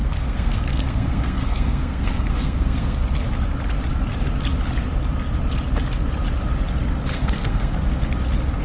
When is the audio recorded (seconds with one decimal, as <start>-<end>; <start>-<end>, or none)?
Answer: 3.0-7.1; 7.7-8.6

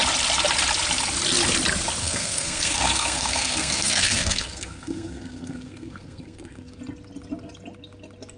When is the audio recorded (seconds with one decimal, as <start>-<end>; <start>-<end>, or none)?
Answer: 0.0-2.0; 6.8-8.4

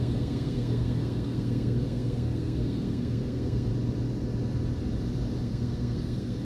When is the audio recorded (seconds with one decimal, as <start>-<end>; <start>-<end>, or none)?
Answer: 3.7-5.4

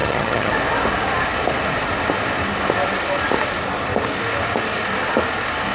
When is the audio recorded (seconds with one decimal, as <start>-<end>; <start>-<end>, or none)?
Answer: 0.5-5.7